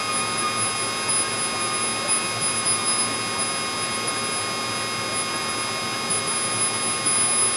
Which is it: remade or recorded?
recorded